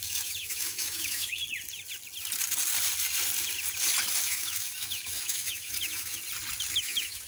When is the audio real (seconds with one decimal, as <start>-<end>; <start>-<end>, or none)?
1.4-4.2; 6.2-6.8